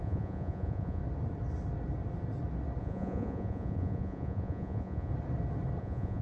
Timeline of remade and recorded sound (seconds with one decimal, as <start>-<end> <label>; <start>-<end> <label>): 0.0-1.0 remade; 1.0-2.8 recorded; 2.8-5.1 remade; 5.1-5.8 recorded; 5.8-6.2 remade